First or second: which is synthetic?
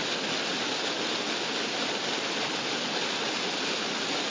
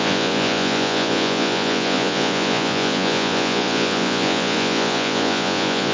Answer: second